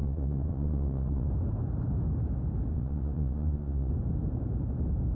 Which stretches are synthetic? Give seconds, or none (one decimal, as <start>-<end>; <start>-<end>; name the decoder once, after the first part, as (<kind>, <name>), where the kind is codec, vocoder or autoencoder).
0.0-1.3 (vocoder, Vocos); 2.7-3.9